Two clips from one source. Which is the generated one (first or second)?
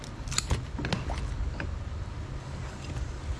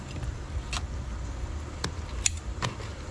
second